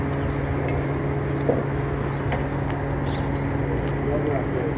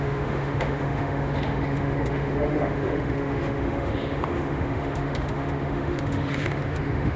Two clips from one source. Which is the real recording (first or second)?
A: first